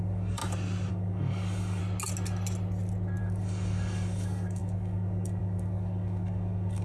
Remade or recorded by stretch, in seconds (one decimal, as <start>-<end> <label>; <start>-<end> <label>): 0.0-0.4 remade; 0.4-0.9 recorded; 0.9-1.8 remade; 1.8-3.2 recorded; 3.2-6.8 remade